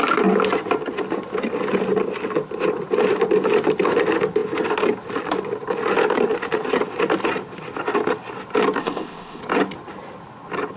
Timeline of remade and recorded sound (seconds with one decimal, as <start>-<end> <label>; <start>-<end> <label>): 0.0-8.8 recorded; 8.8-9.4 remade; 9.4-10.8 recorded